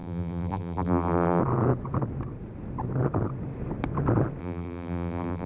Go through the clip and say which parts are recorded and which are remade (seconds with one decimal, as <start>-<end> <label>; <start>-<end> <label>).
0.0-1.4 remade; 1.4-4.4 recorded; 4.4-5.5 remade